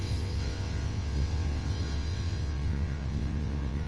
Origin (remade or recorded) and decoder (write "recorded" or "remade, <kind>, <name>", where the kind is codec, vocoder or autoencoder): remade, vocoder, WaveNeXt